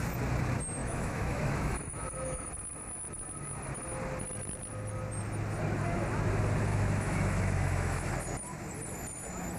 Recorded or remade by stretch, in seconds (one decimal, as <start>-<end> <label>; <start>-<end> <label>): 0.0-0.8 recorded; 0.8-2.5 remade; 2.5-6.7 recorded; 6.7-8.1 remade; 8.1-9.6 recorded